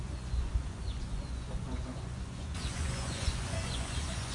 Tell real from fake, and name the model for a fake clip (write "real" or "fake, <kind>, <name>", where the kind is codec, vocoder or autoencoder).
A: fake, vocoder, Vocos